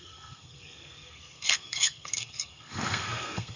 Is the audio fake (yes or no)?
yes